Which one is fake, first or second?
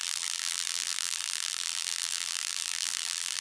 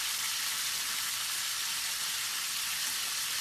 first